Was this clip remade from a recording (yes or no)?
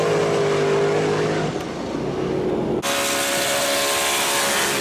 no